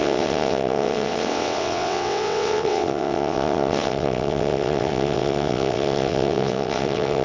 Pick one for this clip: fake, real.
fake